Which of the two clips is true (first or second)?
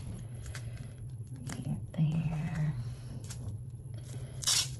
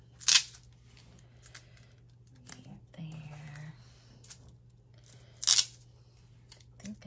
second